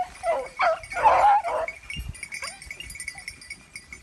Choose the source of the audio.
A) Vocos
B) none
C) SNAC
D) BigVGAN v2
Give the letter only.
B